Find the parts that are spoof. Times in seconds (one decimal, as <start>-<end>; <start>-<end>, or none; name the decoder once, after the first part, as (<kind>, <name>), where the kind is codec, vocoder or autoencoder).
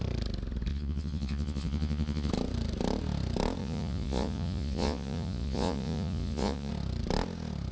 0.7-2.3 (vocoder, Vocos); 3.6-6.7